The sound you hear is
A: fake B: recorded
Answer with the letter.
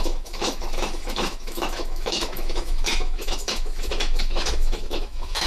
A